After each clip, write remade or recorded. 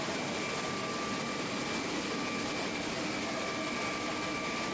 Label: recorded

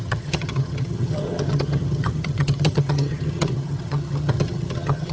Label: remade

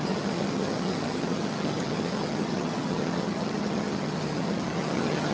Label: remade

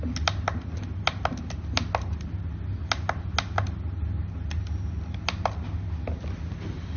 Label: recorded